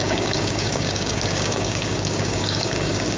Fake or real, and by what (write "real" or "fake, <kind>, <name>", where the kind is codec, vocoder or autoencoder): fake, codec, DAC